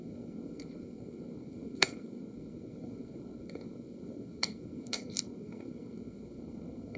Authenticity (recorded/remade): remade